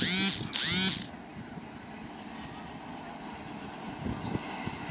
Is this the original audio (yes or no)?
yes